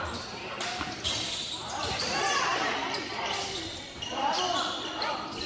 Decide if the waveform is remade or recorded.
remade